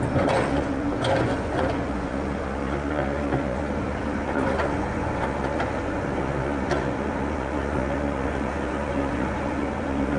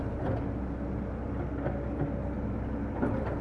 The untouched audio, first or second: second